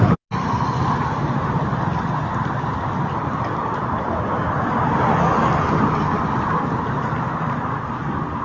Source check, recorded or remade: recorded